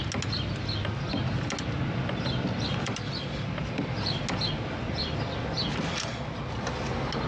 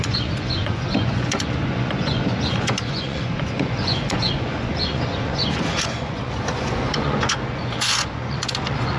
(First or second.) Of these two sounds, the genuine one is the first